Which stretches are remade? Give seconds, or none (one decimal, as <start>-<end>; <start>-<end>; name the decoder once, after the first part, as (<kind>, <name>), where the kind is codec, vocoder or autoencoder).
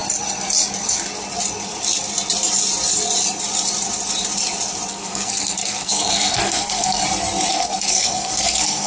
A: 4.9-7.0 (codec, SNAC); 7.5-8.9